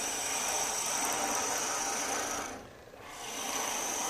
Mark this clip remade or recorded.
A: remade